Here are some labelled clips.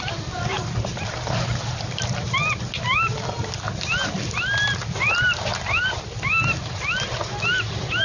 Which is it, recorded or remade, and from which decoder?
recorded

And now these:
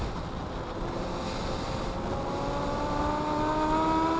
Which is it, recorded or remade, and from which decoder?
recorded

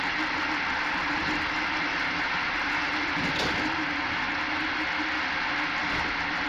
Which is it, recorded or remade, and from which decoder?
recorded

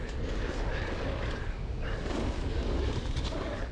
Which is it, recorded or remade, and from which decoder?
remade, codec, DAC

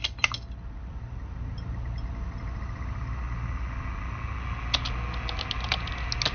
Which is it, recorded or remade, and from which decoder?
recorded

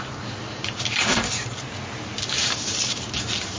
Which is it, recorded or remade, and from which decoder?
recorded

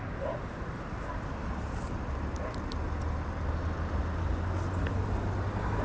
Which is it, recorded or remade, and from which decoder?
recorded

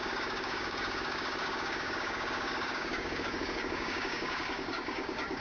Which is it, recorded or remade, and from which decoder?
remade, codec, DAC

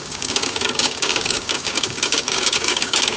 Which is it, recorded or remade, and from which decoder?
remade, codec, DAC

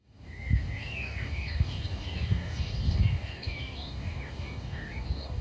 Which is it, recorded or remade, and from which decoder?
remade, codec, DAC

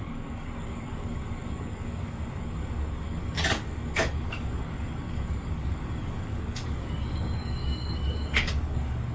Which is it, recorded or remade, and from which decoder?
remade, codec, DAC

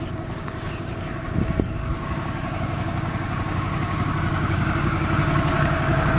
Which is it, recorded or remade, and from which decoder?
remade, codec, DAC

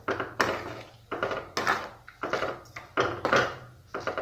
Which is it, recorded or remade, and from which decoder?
recorded